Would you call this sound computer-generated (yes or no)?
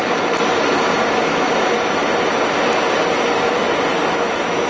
no